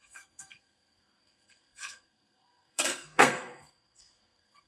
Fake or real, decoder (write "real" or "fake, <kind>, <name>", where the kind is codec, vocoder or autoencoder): fake, codec, SNAC